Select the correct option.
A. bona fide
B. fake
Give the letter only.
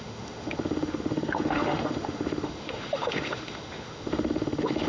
B